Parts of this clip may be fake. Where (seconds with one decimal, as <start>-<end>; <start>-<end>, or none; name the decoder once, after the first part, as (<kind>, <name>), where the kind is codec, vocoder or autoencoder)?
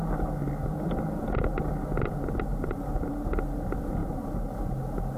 2.5-3.1 (vocoder, BigVGAN v2); 4.0-4.6